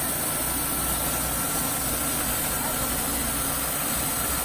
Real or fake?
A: real